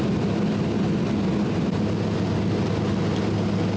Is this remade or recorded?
recorded